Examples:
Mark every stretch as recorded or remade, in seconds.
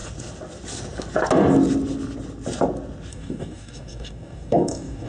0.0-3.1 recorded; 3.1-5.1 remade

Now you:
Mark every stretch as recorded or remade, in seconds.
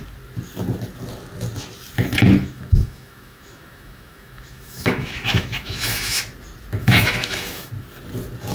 0.0-2.4 recorded; 2.4-6.2 remade; 6.2-6.8 recorded; 6.8-7.7 remade; 7.7-8.5 recorded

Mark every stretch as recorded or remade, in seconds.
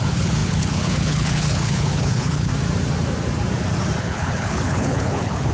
0.0-2.5 remade; 2.5-4.0 recorded; 4.0-5.5 remade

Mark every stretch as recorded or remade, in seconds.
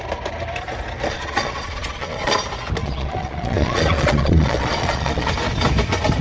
0.0-1.1 recorded; 1.1-2.3 remade; 2.3-2.8 recorded; 2.8-5.3 remade; 5.3-6.2 recorded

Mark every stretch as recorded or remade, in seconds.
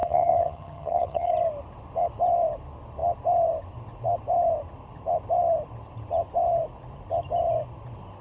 0.0-1.3 remade; 1.3-8.2 recorded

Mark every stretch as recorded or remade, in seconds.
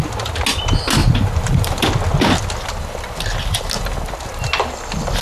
0.0-1.0 recorded; 1.0-1.8 remade; 1.8-5.2 recorded